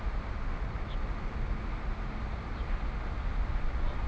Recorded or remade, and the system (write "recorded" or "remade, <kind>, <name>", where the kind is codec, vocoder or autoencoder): recorded